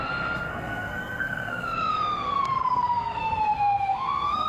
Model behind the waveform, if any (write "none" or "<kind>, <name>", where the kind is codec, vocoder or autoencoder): codec, SNAC